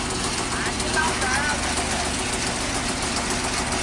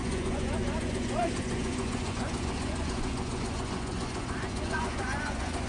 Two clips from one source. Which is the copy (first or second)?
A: second